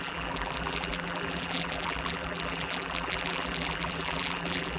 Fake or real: fake